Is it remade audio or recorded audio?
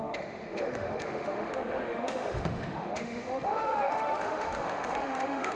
remade